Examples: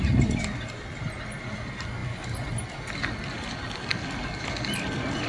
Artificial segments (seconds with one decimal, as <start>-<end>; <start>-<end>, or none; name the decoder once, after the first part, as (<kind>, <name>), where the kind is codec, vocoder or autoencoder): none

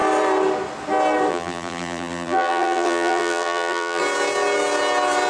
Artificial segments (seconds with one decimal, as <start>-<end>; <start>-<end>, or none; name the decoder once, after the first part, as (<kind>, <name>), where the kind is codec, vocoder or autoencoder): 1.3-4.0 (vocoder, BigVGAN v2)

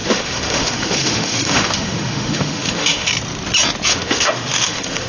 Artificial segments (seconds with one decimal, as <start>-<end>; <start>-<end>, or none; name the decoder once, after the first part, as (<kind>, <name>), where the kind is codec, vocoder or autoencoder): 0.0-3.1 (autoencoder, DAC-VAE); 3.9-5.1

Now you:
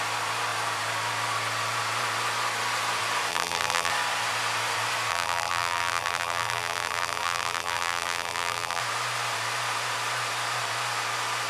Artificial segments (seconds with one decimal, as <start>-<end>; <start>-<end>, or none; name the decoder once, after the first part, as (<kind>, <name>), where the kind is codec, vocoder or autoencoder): 3.3-3.9 (vocoder, BigVGAN v2); 5.1-8.8

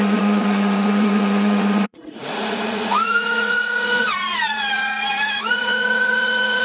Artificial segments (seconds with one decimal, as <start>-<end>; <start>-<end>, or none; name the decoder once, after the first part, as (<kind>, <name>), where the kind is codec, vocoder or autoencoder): 0.0-6.6 (vocoder, Vocos)

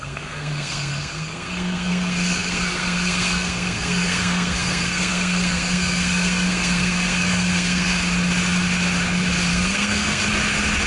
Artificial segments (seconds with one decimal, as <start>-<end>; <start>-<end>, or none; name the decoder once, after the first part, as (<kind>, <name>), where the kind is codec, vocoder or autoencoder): 0.0-7.9 (codec, SNAC); 9.5-10.2

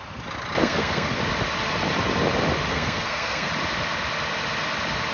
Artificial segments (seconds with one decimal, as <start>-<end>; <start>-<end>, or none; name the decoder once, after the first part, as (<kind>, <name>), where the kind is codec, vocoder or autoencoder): 0.6-1.2 (codec, SNAC); 2.7-3.5

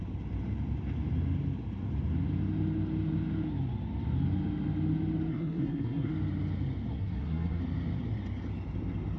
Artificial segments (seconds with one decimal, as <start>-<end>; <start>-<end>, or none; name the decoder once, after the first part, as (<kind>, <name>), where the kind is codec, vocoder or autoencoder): 5.3-6.1 (codec, SNAC); 6.9-7.6